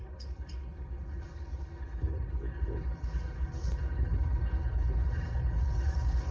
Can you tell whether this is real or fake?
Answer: fake